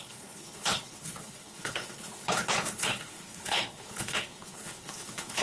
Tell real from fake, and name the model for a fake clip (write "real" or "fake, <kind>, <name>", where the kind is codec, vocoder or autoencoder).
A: fake, codec, HILCodec